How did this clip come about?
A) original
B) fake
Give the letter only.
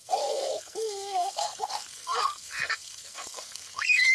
B